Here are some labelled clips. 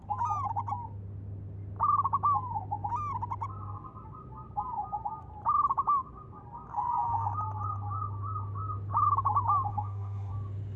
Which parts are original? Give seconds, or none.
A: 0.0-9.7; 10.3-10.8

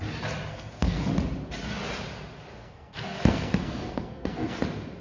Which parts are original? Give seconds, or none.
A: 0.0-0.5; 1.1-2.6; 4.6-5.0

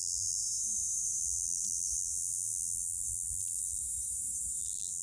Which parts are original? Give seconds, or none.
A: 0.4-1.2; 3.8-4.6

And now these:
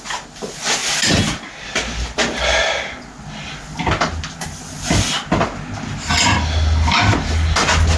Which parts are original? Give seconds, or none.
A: 0.0-8.0

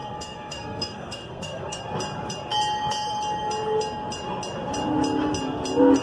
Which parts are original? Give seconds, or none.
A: 1.8-6.0

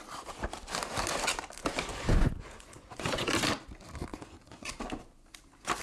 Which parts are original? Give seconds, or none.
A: 0.0-1.9; 3.3-4.1; 4.8-5.8

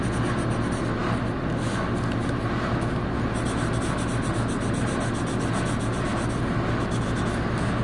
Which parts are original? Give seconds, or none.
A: 0.0-7.8

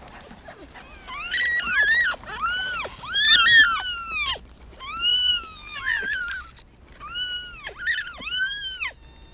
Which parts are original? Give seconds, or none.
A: 0.0-5.1; 6.2-9.3